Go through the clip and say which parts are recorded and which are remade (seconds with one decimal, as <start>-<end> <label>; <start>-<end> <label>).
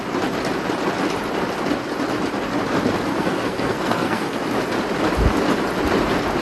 0.0-3.1 recorded; 3.1-4.4 remade; 4.4-6.4 recorded